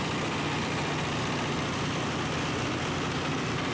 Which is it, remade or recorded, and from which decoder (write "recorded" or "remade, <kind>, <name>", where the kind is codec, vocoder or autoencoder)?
recorded